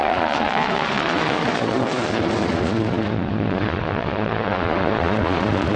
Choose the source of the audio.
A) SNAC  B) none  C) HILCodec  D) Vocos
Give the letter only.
D